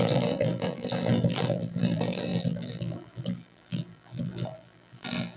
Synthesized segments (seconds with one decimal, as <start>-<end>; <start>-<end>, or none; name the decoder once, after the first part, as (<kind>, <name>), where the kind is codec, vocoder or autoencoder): 0.0-5.4 (vocoder, BigVGAN v2)